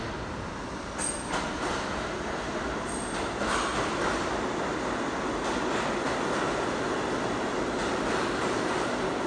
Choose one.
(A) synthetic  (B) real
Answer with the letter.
B